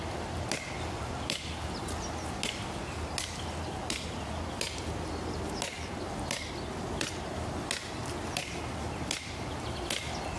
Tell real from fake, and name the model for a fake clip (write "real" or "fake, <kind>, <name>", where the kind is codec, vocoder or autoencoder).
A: real